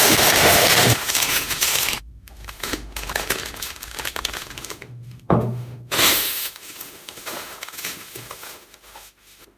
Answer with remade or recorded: remade